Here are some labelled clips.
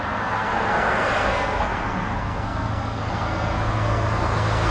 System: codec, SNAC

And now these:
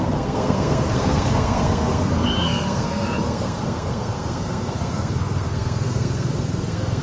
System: codec, SNAC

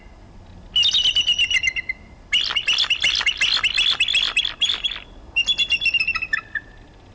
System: none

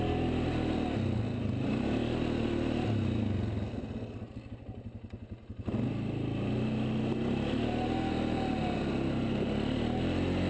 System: none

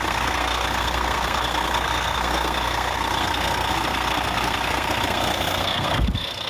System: codec, SNAC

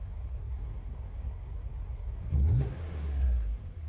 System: codec, SNAC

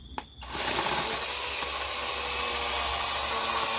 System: none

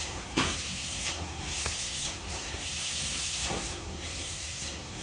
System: codec, SNAC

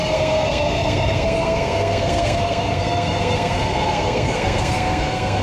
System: codec, SNAC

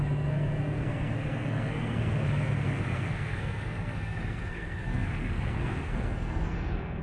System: codec, SNAC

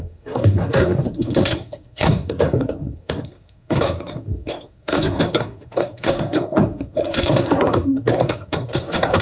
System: codec, SNAC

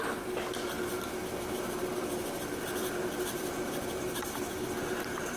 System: none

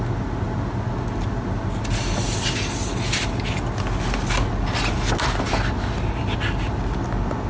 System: none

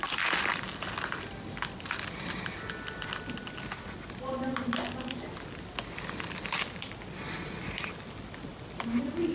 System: none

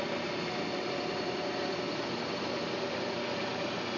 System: none